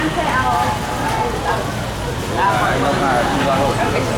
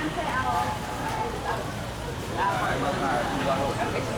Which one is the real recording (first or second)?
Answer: first